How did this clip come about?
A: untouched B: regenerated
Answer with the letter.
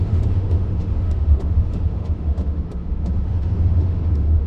B